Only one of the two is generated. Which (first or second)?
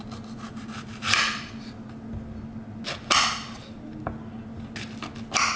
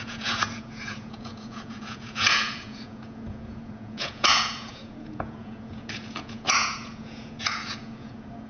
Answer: second